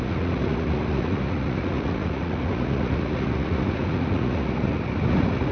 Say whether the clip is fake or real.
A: fake